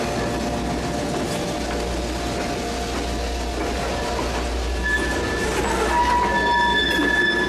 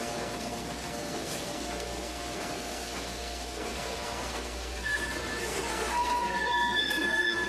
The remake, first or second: second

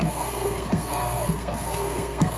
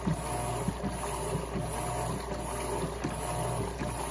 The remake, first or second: first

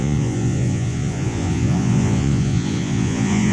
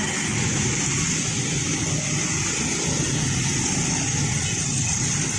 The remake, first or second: first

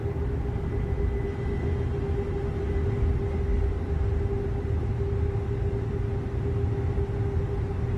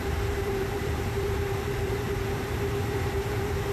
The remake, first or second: second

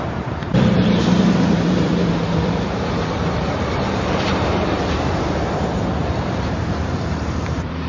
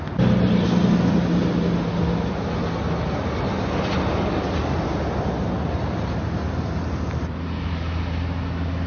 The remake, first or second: first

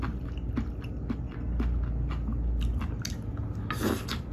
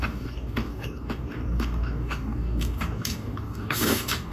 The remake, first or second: second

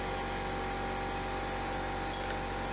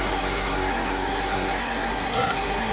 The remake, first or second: second